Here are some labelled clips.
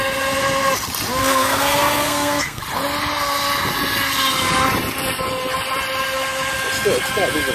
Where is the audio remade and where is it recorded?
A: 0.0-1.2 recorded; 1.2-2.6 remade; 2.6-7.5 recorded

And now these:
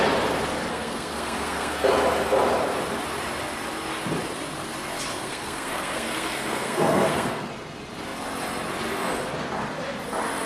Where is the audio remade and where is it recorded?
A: 0.0-0.7 recorded; 0.7-1.9 remade; 1.9-5.1 recorded; 5.1-7.5 remade; 7.5-10.5 recorded

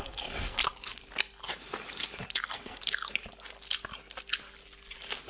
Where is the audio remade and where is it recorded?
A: 0.0-0.6 remade; 0.6-2.4 recorded; 2.4-2.8 remade; 2.8-5.3 recorded